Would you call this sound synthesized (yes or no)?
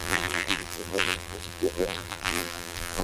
yes